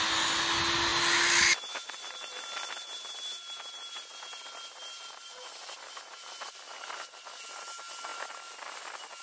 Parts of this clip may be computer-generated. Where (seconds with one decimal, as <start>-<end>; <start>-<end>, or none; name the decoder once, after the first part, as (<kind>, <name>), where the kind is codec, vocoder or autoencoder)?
none